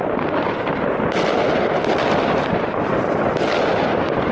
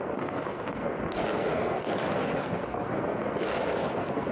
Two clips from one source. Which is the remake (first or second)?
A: second